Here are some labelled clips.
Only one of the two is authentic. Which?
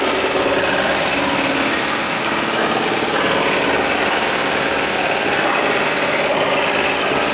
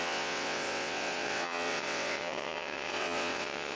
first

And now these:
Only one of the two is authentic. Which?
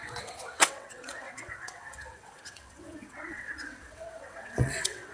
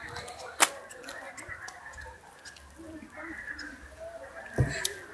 second